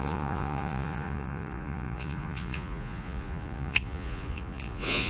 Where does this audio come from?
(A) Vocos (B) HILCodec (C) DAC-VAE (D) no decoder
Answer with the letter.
A